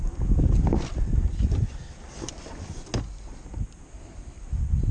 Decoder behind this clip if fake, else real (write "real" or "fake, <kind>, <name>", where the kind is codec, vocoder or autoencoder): real